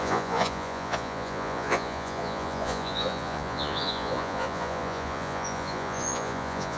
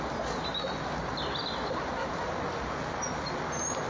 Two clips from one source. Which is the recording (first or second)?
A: second